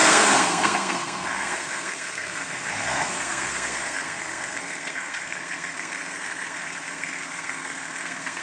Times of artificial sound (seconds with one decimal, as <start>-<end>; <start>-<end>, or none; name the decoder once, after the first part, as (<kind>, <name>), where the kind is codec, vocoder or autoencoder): 0.0-8.4 (codec, SNAC)